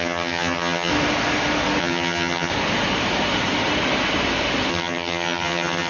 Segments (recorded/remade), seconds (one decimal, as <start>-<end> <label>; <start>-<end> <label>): 0.0-0.9 remade; 0.9-1.8 recorded; 1.8-2.5 remade; 2.5-4.7 recorded; 4.7-5.9 remade